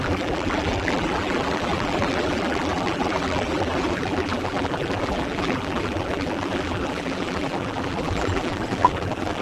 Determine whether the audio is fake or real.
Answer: fake